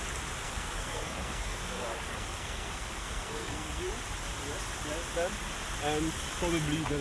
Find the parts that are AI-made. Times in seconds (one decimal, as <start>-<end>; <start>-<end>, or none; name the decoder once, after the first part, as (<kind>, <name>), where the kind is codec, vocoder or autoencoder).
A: 0.4-3.9 (codec, SNAC)

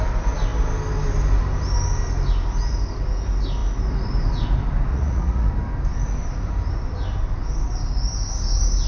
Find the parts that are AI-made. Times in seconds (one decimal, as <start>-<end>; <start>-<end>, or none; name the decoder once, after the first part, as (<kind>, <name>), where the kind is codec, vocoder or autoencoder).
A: 4.9-5.5 (vocoder, Vocos)

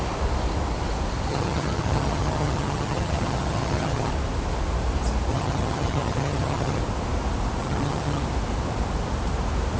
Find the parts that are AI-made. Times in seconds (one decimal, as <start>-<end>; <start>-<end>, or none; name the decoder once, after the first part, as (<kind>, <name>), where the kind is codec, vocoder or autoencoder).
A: 1.3-4.1 (vocoder, HiFi-GAN); 5.3-6.8; 7.6-8.2

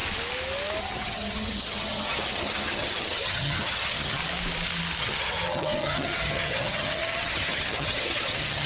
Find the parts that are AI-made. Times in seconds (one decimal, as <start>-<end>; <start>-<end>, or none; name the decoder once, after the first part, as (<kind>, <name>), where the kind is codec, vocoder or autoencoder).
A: 0.8-4.2 (vocoder, HiFi-GAN); 5.0-8.7